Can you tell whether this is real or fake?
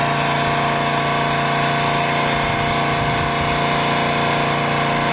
real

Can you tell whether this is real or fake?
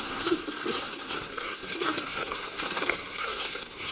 fake